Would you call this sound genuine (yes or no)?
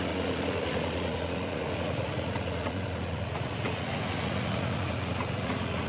no